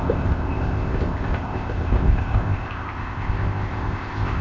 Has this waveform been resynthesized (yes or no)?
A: yes